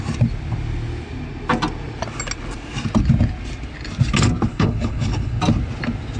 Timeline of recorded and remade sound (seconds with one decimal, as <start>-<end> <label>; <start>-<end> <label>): 0.0-4.5 recorded; 4.5-5.4 remade; 5.4-6.2 recorded